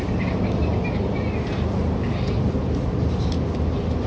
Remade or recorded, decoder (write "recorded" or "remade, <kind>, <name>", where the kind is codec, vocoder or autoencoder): recorded